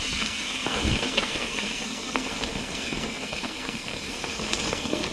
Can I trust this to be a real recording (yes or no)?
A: no